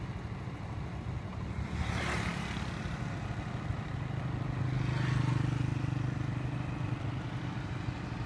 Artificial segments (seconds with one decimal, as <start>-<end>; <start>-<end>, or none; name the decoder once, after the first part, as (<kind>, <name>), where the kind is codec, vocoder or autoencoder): none